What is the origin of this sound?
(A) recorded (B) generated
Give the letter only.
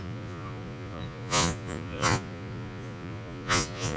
B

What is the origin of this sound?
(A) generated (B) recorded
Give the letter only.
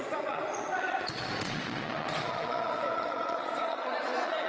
A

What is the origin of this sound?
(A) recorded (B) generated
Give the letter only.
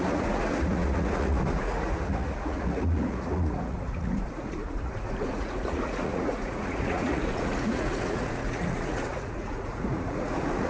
B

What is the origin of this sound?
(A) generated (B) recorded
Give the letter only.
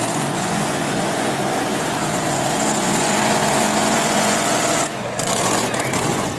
A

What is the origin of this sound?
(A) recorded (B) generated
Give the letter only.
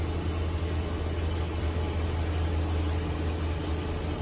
A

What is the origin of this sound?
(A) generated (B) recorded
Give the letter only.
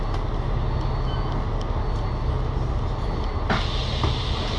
B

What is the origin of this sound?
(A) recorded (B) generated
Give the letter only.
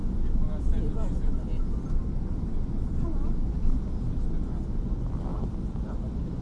A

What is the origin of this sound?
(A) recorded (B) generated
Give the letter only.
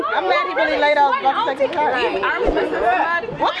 A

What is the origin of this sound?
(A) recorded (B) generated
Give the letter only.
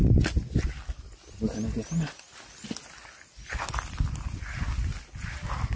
A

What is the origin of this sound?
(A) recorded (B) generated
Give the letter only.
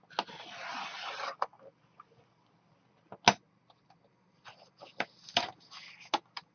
A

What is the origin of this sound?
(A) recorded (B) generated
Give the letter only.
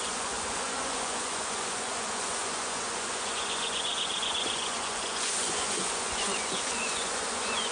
B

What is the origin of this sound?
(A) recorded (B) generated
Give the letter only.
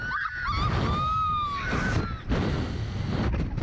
A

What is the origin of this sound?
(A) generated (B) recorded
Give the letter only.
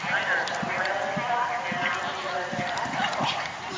B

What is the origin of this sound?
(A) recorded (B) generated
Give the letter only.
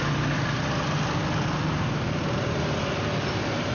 A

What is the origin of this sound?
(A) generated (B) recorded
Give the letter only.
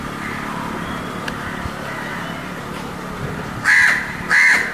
B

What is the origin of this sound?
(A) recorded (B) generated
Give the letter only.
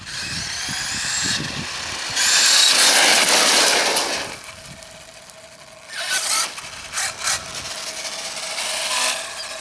A